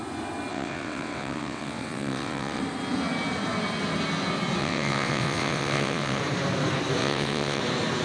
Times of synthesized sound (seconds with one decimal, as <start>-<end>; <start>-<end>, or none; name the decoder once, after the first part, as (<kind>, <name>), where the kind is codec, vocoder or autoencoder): 0.5-2.6 (vocoder, WaveNeXt); 4.6-6.2; 7.0-7.6